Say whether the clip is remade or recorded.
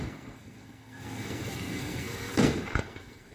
remade